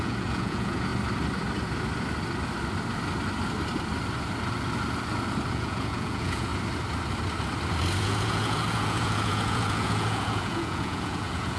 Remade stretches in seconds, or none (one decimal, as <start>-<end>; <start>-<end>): 0.0-0.9; 5.5-6.5; 8.0-11.6